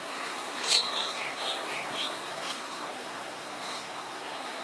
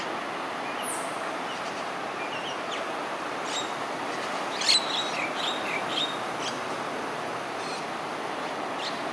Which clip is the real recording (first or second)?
second